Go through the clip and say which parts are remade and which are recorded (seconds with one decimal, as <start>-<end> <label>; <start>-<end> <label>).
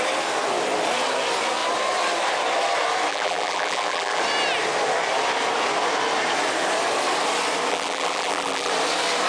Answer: 0.0-3.1 recorded; 3.1-4.2 remade; 4.2-7.7 recorded; 7.7-8.7 remade; 8.7-9.3 recorded